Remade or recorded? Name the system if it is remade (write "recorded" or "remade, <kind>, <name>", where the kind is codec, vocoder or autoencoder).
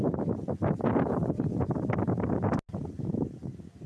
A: recorded